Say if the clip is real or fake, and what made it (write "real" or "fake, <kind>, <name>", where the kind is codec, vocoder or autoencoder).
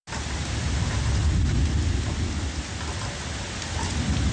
real